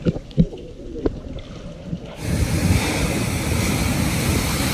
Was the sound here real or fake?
real